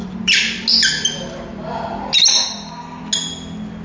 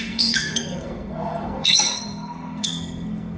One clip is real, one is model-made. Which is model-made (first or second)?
second